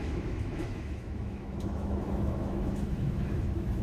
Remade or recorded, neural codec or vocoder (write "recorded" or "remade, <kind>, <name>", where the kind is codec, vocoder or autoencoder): remade, autoencoder, DAC-VAE